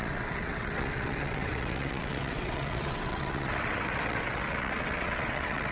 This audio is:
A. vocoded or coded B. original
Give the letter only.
A